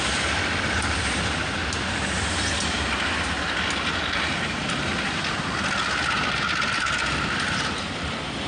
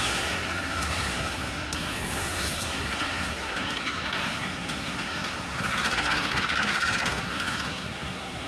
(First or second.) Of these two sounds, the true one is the first